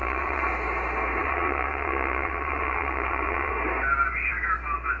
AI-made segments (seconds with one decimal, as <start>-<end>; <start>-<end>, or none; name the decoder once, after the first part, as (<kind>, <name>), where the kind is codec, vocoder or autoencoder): 0.0-0.5 (vocoder, WaveNeXt); 1.2-3.5